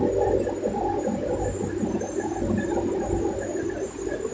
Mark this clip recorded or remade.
recorded